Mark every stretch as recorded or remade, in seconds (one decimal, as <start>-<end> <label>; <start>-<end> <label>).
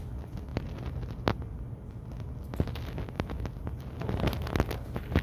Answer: 0.0-5.2 recorded